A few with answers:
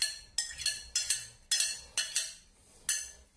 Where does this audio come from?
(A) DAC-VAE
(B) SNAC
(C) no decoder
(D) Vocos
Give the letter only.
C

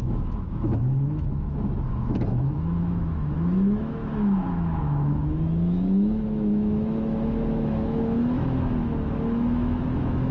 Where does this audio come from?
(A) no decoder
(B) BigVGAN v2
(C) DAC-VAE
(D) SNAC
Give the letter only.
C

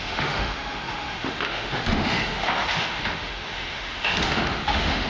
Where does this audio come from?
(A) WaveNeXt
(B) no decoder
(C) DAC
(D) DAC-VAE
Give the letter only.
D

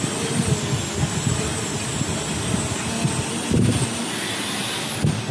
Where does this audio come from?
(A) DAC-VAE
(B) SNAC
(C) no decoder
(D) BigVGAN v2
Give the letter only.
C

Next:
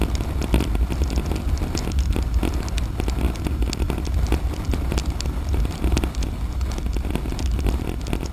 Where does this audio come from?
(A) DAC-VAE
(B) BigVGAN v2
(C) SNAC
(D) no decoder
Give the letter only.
D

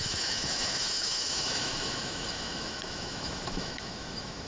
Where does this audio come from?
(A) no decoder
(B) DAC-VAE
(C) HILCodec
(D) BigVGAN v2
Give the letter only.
B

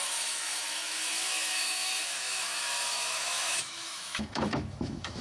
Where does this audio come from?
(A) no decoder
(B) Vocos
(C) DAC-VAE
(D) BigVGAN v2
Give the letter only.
C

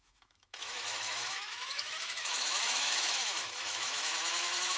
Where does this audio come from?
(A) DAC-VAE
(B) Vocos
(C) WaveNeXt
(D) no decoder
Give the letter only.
A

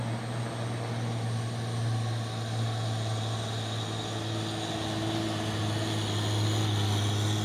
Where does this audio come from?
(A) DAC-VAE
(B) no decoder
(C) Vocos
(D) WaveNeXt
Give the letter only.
B